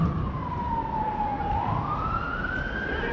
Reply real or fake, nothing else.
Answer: real